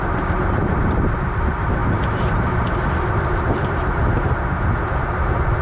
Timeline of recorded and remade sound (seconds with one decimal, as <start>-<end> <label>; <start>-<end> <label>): 0.0-1.8 remade; 1.8-5.6 recorded